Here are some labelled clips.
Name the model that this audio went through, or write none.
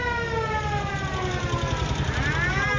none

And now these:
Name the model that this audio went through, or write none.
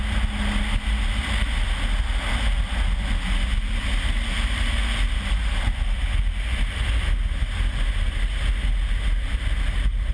none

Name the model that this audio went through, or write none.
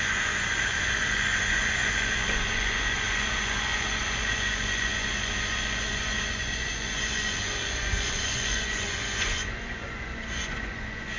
vocoder, Vocos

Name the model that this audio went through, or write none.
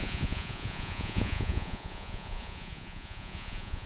vocoder, Vocos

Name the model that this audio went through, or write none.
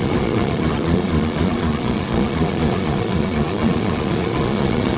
vocoder, Vocos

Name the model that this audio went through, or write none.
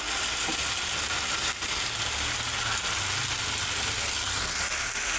none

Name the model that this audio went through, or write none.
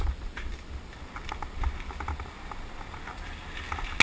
none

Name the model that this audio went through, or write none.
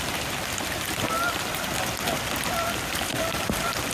none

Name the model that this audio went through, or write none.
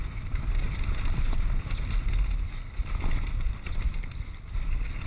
none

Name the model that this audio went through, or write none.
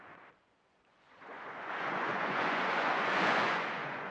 vocoder, Vocos